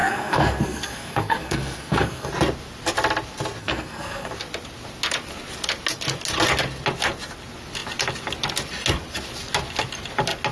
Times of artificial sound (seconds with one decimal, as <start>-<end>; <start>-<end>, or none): 0.0-2.3; 3.6-4.3